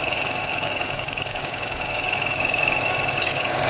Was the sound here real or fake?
fake